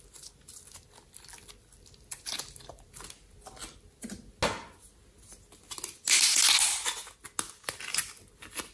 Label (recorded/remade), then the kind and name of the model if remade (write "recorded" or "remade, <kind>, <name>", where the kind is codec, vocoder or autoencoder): recorded